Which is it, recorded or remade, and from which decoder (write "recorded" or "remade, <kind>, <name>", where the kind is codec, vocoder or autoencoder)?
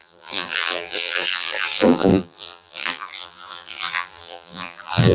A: remade, vocoder, BigVGAN v2